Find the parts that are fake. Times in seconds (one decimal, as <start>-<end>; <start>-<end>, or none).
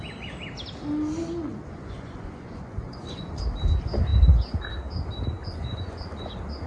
1.5-3.4; 5.4-6.3